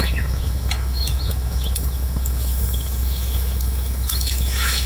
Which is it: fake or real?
fake